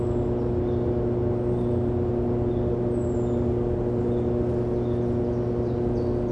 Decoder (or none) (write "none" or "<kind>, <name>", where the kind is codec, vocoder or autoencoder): none